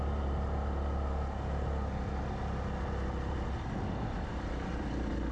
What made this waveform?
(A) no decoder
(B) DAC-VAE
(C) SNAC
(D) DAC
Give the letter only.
A